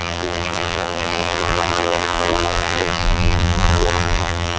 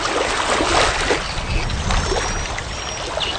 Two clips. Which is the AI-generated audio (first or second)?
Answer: first